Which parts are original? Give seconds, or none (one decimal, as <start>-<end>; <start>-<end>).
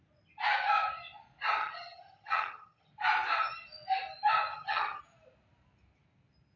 0.0-1.6; 2.9-4.5; 5.0-6.6